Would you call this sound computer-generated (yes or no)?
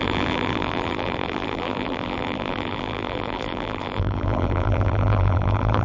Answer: yes